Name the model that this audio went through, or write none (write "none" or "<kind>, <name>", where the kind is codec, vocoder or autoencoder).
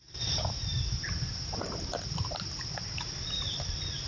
none